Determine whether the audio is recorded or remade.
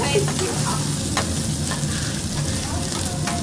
recorded